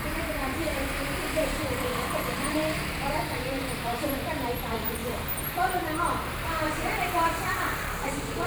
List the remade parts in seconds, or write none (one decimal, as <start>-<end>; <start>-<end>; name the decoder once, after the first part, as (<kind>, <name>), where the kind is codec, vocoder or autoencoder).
0.0-8.5 (vocoder, BigVGAN v2)